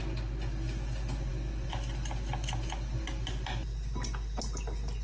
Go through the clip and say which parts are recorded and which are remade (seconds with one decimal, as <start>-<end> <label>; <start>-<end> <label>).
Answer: 0.0-5.0 recorded